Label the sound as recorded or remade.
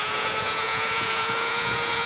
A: remade